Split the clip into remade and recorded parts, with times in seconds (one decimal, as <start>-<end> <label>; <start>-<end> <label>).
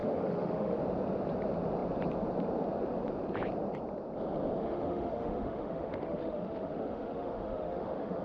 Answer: 0.0-0.8 remade; 0.8-4.6 recorded; 4.6-8.2 remade